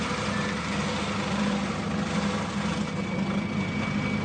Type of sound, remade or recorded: recorded